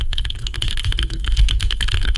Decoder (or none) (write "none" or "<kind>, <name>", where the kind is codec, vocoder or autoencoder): codec, SNAC